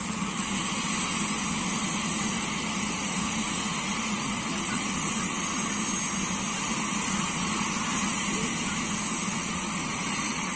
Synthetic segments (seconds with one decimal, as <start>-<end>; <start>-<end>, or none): 0.0-0.6; 1.9-5.6; 6.7-7.8; 9.3-10.6